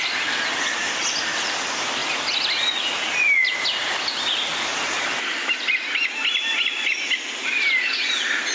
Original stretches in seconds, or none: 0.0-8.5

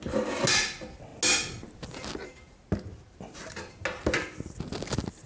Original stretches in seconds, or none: 0.0-5.3

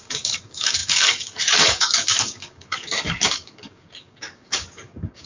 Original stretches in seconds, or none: none

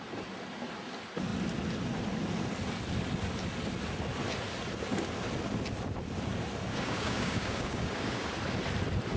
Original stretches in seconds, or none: 0.0-6.7; 8.3-9.2

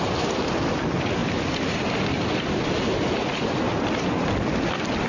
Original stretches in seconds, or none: 0.0-5.1

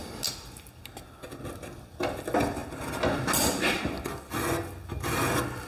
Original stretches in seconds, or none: 0.0-5.7

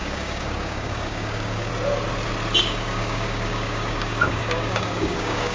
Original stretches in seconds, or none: 1.7-2.6

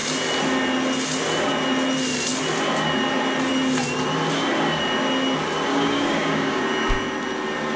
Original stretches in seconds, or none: 0.0-5.7; 6.6-7.8